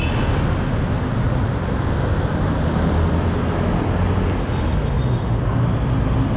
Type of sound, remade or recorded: recorded